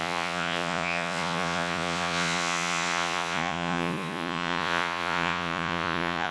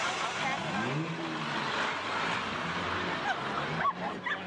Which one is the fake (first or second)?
first